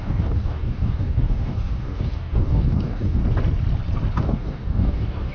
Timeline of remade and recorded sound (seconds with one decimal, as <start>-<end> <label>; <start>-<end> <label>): 0.0-3.2 remade; 3.2-4.2 recorded; 4.2-5.3 remade